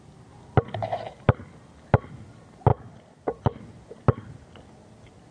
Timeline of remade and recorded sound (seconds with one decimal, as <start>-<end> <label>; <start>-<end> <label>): 0.0-5.3 recorded